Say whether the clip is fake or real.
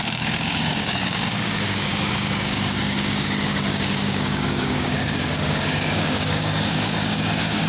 fake